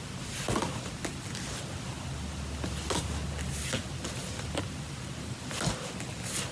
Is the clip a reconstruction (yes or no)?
no